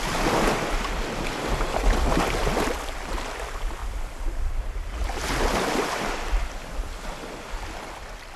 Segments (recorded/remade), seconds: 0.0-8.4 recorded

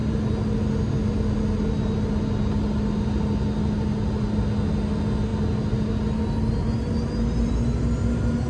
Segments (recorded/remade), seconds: 0.0-8.5 recorded

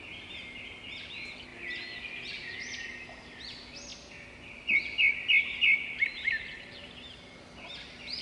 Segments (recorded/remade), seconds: 0.0-8.2 recorded

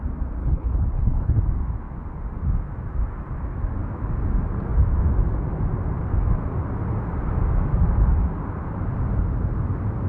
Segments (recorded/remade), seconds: 0.0-0.4 recorded; 0.4-1.4 remade; 1.4-10.1 recorded

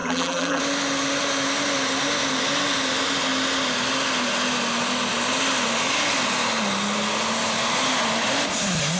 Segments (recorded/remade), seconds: 0.0-0.6 remade; 0.6-9.0 recorded